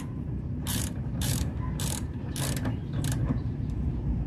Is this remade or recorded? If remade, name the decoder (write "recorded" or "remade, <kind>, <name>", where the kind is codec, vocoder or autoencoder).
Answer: remade, vocoder, BigVGAN v2